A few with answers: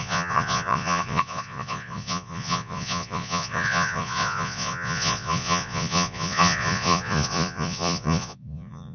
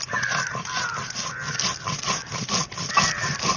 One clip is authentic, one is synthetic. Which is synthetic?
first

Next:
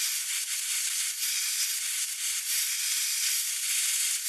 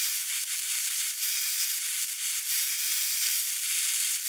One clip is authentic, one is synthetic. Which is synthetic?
second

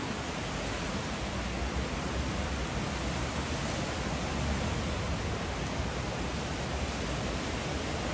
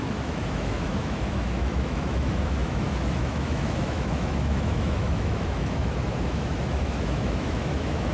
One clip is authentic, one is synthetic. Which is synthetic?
second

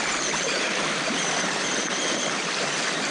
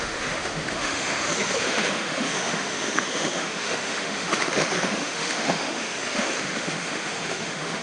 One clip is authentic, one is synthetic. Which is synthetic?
second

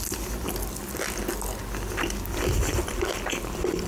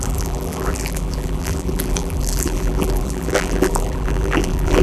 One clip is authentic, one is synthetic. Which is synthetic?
second